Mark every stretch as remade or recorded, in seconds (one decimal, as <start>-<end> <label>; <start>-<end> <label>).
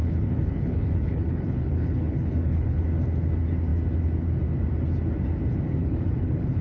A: 0.0-2.8 remade; 2.8-5.8 recorded; 5.8-6.6 remade